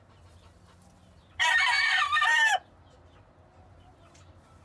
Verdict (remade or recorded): recorded